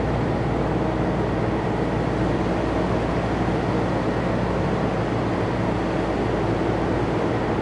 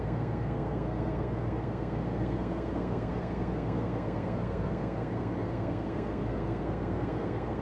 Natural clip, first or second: first